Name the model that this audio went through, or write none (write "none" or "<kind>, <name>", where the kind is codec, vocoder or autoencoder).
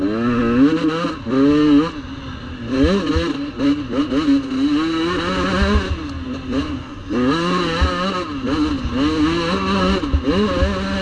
none